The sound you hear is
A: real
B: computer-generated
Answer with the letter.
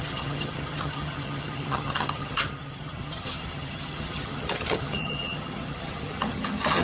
B